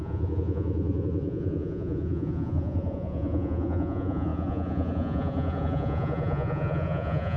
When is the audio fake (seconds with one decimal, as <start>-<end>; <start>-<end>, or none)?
0.0-7.4